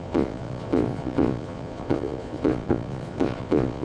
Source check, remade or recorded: remade